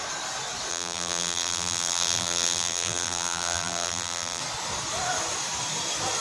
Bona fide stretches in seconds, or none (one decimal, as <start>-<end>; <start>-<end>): 0.0-0.7; 4.4-6.2